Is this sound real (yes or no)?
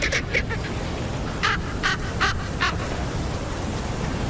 yes